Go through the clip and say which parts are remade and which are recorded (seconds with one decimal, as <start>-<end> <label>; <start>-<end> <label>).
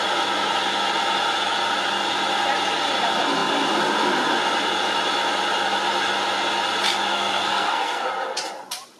0.0-7.1 recorded; 7.1-8.1 remade; 8.1-9.0 recorded